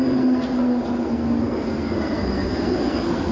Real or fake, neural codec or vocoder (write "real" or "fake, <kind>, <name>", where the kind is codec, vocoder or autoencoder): fake, codec, SNAC